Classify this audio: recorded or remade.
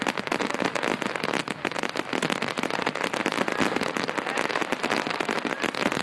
recorded